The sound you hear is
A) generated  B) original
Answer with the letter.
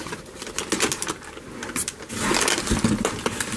B